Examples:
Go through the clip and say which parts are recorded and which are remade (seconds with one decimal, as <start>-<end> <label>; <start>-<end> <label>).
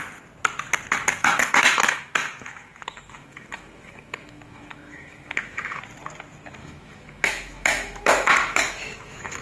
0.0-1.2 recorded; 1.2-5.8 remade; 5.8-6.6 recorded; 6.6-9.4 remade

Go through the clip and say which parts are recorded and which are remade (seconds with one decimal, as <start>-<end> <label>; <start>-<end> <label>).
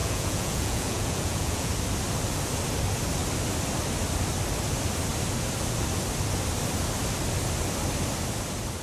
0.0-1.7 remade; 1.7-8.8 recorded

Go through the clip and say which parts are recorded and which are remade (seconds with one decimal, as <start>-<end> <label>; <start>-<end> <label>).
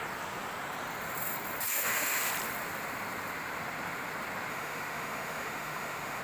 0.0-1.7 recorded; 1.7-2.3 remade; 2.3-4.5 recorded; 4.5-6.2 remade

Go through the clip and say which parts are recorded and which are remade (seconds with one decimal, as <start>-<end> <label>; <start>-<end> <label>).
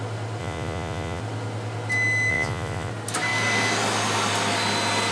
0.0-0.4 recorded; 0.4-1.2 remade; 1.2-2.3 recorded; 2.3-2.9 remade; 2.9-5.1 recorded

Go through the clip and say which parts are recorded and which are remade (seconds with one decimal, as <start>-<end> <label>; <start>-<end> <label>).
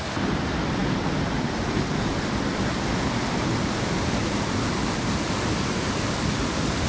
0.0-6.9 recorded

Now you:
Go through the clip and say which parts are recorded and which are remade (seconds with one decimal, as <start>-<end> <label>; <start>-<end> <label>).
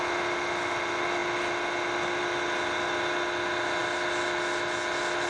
0.0-5.3 recorded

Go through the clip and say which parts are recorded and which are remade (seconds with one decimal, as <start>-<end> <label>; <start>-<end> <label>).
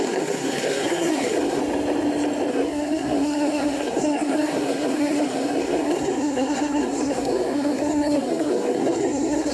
0.0-1.6 remade; 1.6-2.5 recorded; 2.5-9.5 remade